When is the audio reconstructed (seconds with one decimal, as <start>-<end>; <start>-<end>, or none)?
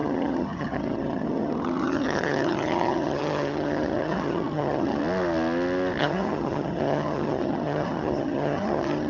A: 0.0-5.0; 6.0-9.1